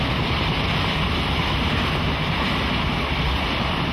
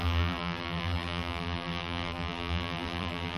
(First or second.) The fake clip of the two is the second